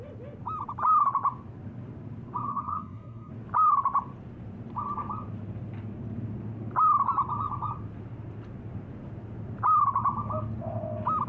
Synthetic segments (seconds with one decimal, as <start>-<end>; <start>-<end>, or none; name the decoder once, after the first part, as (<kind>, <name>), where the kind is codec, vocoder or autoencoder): 2.5-3.3 (codec, SNAC)